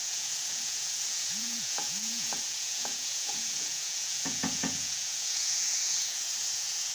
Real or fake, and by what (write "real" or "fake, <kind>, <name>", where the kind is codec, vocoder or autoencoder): fake, vocoder, Vocos